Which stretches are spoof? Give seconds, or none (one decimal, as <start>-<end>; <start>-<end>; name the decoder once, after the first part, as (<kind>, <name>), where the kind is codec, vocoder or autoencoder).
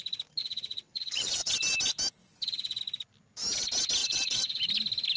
0.4-1.5 (vocoder, WaveNeXt); 2.2-2.8; 4.0-4.6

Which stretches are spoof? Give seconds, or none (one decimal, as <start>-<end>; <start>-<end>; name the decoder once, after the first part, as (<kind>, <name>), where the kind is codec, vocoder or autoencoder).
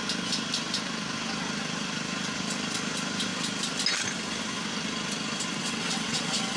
5.6-6.6 (vocoder, WaveNeXt)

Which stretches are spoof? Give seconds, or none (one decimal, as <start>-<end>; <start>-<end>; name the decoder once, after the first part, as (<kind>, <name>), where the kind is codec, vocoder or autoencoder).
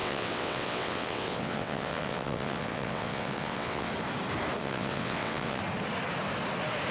0.0-3.9 (vocoder, WaveNeXt); 4.6-5.6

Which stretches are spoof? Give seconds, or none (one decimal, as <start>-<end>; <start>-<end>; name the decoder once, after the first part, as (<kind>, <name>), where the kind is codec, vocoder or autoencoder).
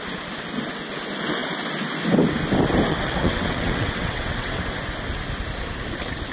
2.9-4.6 (vocoder, WaveNeXt)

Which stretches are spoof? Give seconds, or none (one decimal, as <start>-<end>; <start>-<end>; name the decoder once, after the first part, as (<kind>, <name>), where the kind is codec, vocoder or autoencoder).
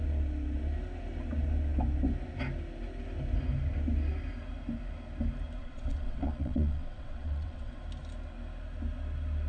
5.6-7.8 (vocoder, WaveNeXt)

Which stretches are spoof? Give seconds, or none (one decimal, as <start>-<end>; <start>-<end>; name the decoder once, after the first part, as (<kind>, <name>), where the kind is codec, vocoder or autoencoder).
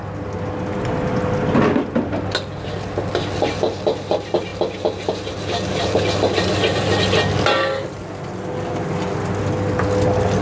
none